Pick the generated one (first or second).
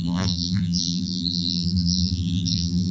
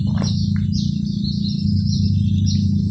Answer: first